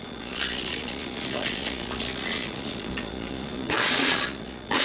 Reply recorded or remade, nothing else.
remade